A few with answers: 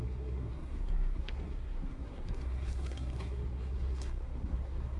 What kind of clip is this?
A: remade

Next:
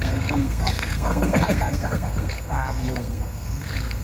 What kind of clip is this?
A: remade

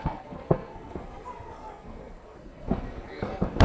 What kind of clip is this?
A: remade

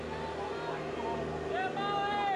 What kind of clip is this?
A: recorded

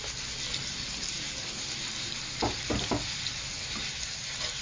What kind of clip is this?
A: recorded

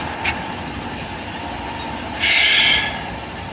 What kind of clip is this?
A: recorded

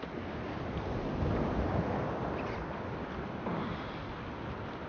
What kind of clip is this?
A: recorded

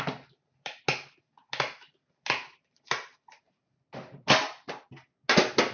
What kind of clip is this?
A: recorded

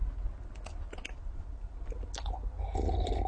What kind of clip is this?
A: recorded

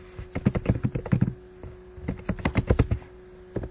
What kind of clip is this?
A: recorded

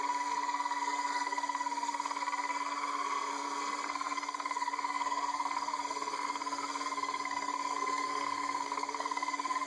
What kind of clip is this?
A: remade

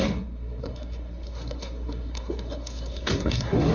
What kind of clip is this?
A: remade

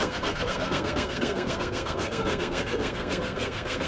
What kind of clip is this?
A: remade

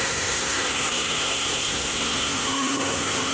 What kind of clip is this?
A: remade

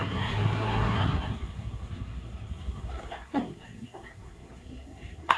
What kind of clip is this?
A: remade